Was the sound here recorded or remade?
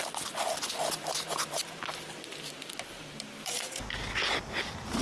recorded